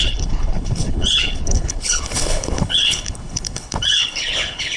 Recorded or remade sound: remade